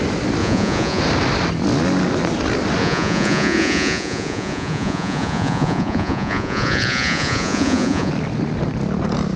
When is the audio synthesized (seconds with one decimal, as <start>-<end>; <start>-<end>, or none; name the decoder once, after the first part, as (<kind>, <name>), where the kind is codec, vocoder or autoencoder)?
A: 0.4-1.0 (vocoder, Vocos); 2.8-8.1